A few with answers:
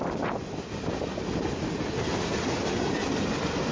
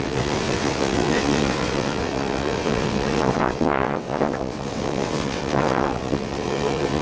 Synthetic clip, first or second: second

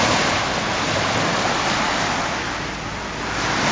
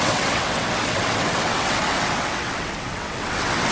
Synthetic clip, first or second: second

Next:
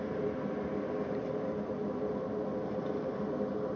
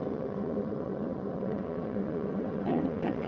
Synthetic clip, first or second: second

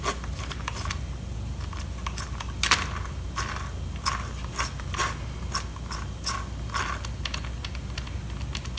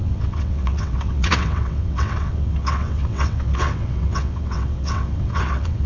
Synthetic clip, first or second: second